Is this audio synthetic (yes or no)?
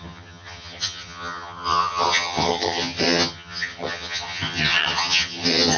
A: yes